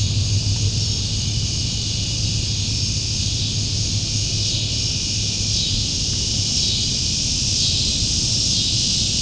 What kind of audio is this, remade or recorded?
recorded